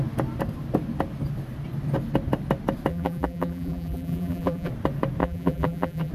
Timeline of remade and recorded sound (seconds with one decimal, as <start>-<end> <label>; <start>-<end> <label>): 0.0-2.9 recorded; 2.9-4.7 remade; 4.7-5.2 recorded; 5.2-6.1 remade